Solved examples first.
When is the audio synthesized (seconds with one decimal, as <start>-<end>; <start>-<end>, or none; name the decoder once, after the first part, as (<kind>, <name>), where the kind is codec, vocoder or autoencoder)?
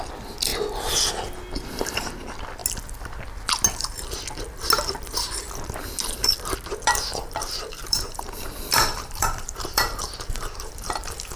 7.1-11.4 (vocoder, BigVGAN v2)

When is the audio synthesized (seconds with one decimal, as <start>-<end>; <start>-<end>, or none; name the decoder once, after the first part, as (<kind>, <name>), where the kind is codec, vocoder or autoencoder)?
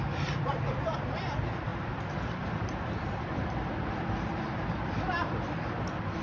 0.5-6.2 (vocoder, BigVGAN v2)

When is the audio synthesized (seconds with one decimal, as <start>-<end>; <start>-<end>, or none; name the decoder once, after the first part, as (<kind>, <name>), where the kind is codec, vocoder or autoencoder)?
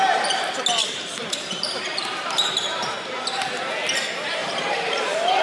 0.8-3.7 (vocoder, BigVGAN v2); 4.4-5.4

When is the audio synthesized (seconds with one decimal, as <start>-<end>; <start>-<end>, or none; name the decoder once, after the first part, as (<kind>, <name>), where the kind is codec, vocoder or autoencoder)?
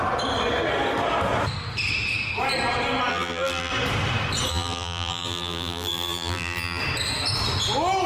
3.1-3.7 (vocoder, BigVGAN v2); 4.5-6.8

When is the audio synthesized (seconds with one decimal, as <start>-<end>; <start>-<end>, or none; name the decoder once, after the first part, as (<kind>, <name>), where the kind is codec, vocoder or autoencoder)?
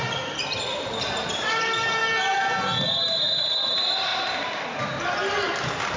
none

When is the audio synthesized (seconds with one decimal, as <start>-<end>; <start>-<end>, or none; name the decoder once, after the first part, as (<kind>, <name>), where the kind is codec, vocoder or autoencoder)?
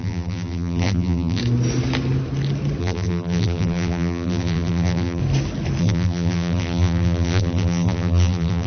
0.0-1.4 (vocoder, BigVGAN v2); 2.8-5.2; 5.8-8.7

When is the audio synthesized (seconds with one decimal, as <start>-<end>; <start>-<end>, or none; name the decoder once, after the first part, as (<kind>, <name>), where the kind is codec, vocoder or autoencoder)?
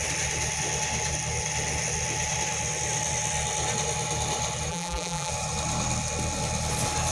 4.7-5.3 (vocoder, BigVGAN v2)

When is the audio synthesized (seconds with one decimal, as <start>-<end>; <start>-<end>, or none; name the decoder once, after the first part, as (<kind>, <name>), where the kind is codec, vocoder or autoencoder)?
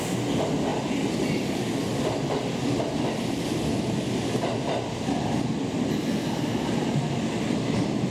none